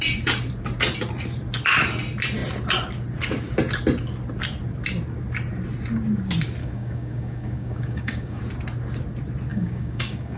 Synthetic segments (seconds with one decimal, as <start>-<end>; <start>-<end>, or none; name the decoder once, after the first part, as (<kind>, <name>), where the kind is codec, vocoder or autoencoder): 6.6-8.4 (codec, DAC); 9.5-10.4